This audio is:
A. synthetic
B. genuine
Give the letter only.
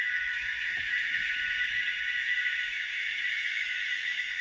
A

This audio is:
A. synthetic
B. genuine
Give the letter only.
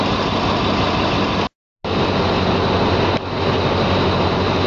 B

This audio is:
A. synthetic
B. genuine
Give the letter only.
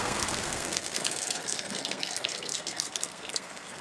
A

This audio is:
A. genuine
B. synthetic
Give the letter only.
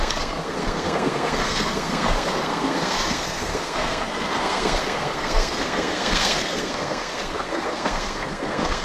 B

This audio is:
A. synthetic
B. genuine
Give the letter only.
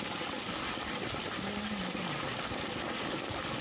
B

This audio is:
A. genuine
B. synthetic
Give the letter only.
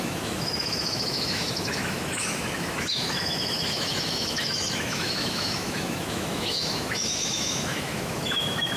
B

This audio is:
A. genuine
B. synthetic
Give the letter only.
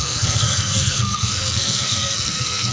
B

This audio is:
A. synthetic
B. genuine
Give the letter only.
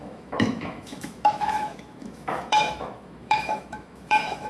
A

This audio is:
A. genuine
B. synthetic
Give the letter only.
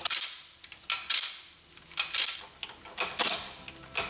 A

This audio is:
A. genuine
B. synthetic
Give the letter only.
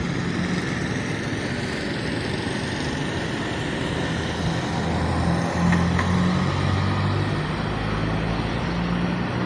A